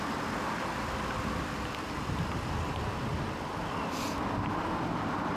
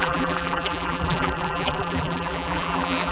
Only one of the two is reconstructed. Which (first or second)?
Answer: second